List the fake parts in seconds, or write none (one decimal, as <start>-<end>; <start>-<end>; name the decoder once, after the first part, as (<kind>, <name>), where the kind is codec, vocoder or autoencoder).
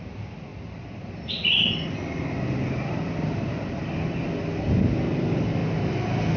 0.0-5.6 (vocoder, BigVGAN v2)